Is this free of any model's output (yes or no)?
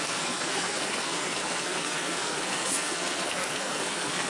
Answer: no